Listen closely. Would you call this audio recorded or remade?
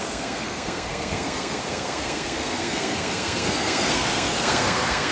remade